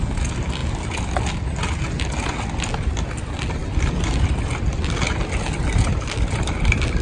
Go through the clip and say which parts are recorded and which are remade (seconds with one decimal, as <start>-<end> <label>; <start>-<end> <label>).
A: 0.0-7.0 recorded